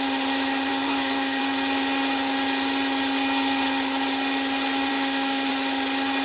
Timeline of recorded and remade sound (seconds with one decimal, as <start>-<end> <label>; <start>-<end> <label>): 0.0-0.7 recorded; 0.7-1.4 remade; 1.4-4.9 recorded; 4.9-5.5 remade; 5.5-6.2 recorded